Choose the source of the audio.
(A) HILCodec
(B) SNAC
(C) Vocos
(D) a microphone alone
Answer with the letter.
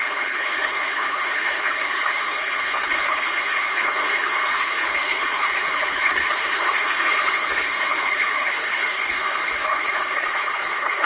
A